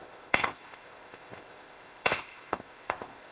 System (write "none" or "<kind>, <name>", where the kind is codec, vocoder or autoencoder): codec, ZipCodec